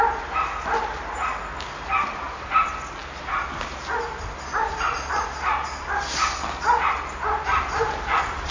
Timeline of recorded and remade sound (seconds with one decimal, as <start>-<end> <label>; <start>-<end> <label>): 0.0-8.5 recorded